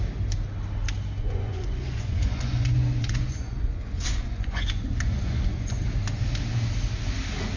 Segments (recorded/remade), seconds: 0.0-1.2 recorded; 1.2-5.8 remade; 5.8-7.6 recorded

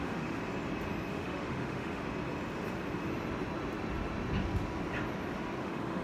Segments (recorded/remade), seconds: 0.0-0.4 remade; 0.4-1.1 recorded; 1.1-2.0 remade; 2.0-5.6 recorded; 5.6-6.0 remade

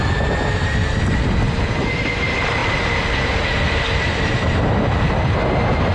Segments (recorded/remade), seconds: 0.0-5.9 recorded

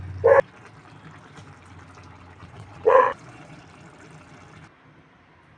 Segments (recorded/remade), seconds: 0.0-2.4 recorded; 2.4-3.6 remade; 3.6-5.6 recorded

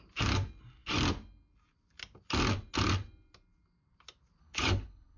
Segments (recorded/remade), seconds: 0.0-4.4 recorded; 4.4-5.2 remade

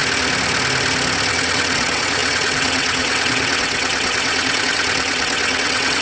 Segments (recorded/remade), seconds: 0.0-1.3 recorded; 1.3-6.0 remade

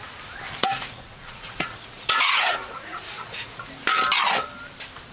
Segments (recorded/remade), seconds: 0.0-0.6 recorded; 0.6-3.7 remade; 3.7-5.1 recorded

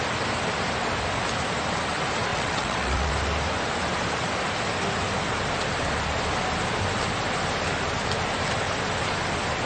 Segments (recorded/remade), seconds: 0.0-2.3 recorded; 2.3-3.1 remade; 3.1-9.7 recorded